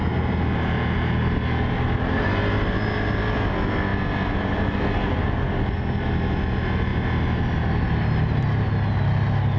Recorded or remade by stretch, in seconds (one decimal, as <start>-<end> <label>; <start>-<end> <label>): 0.0-9.6 recorded